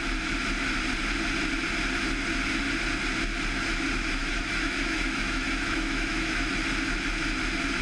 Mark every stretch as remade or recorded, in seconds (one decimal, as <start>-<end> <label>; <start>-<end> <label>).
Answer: 0.0-4.2 recorded; 4.2-6.5 remade; 6.5-7.8 recorded